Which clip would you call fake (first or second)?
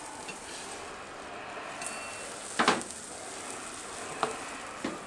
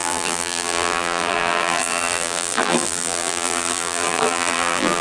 second